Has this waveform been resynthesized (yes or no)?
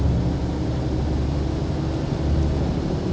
no